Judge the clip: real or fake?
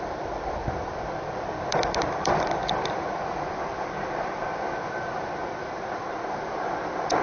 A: fake